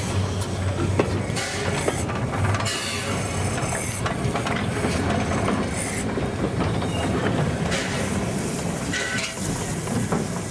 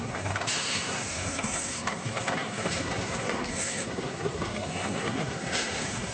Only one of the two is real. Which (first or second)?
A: first